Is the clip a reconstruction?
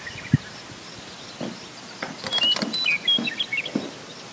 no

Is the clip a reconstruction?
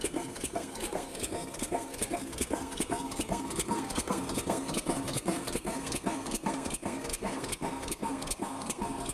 yes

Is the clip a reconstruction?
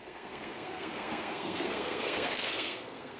yes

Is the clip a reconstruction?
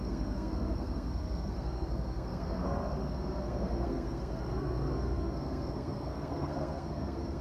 yes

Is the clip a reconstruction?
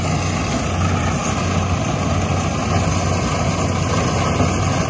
no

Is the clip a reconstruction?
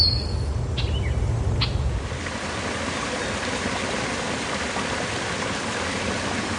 no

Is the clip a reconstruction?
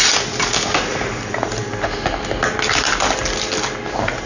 no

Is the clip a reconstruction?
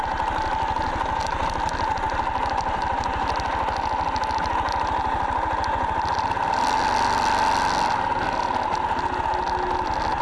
no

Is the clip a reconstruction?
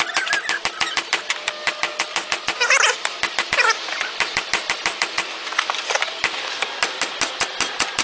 no